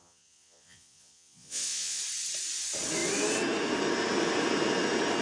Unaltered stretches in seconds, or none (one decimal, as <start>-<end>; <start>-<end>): 2.0-5.2